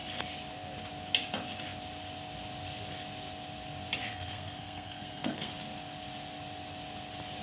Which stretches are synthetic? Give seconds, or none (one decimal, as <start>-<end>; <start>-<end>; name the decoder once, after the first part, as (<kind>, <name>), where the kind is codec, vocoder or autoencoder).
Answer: 4.0-5.5 (codec, SNAC)